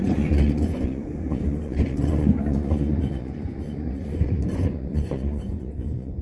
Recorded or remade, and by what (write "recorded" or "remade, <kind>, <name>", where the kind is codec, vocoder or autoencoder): remade, vocoder, Vocos